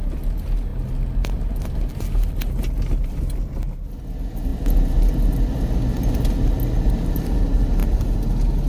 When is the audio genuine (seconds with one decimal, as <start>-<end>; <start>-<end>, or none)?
0.0-8.7